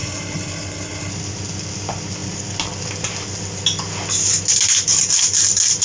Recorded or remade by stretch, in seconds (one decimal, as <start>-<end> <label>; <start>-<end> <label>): 0.0-1.1 remade; 1.1-5.8 recorded